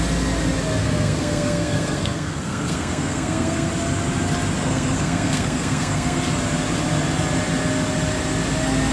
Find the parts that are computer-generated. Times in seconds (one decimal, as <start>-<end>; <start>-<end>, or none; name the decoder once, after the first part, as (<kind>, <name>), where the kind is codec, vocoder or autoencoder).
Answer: 0.8-3.7 (codec, SNAC); 4.6-6.2